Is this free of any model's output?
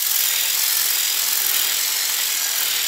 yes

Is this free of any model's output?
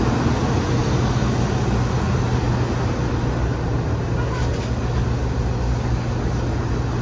yes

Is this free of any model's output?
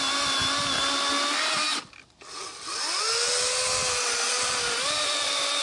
yes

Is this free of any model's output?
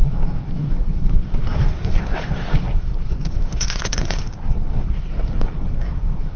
no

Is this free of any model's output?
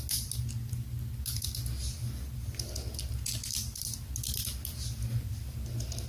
yes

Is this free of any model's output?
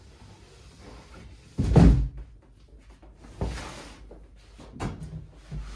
yes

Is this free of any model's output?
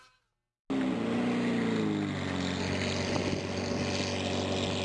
yes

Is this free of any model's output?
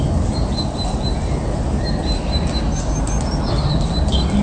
yes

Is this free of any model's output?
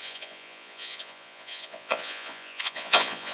no